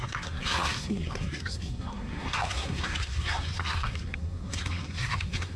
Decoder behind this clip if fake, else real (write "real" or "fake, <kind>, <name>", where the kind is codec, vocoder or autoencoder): fake, codec, SNAC